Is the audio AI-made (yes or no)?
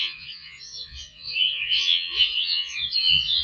yes